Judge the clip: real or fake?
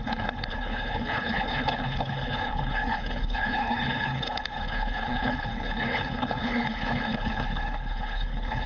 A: fake